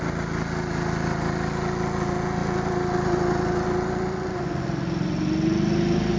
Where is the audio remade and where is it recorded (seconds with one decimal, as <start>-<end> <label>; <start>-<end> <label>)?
0.0-6.2 recorded